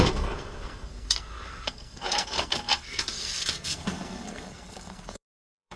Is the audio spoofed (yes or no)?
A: yes